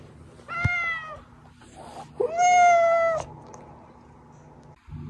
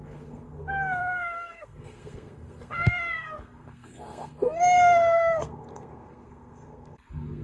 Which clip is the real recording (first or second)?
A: first